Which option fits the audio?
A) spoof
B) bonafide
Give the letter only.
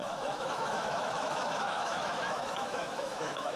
A